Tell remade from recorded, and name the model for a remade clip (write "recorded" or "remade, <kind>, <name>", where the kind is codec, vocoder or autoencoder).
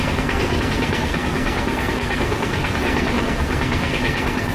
remade, codec, SNAC